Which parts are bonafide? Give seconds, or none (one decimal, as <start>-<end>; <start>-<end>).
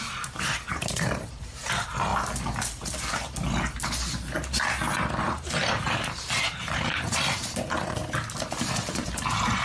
2.1-5.2; 8.0-8.6